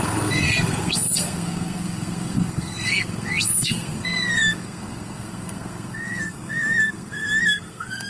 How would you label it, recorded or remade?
remade